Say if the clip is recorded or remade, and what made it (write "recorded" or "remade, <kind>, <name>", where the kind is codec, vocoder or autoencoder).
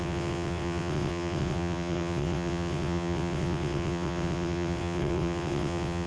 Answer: remade, vocoder, WaveNeXt